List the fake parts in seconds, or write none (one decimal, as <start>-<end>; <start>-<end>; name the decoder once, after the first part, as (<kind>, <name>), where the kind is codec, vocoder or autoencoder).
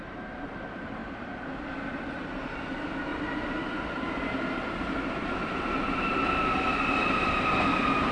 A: 0.0-8.1 (vocoder, BigVGAN v2)